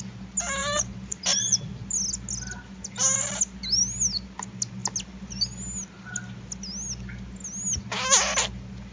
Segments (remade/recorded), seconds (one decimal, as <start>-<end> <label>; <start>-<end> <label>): 0.0-0.6 recorded; 0.6-1.6 remade; 1.6-8.9 recorded